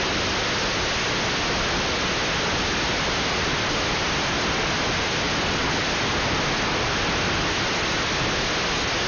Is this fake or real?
real